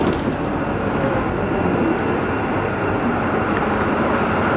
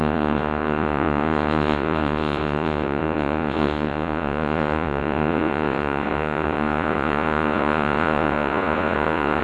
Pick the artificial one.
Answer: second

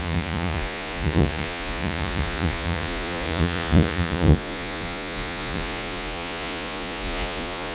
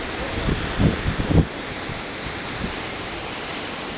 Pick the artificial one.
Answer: first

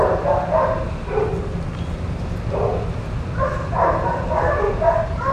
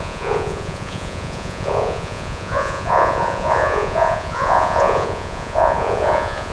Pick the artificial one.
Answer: second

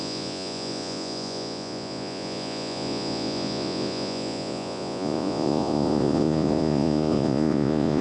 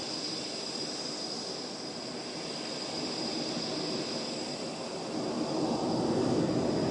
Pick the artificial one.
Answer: first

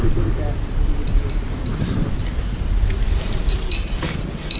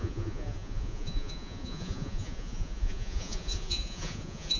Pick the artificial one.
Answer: second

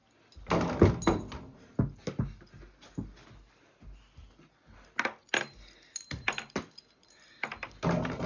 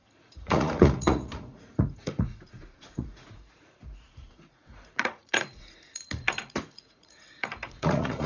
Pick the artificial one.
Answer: second